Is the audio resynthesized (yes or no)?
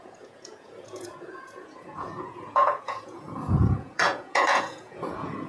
yes